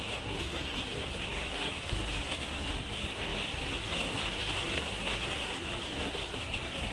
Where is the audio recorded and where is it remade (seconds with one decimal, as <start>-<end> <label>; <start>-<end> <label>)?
0.0-6.9 remade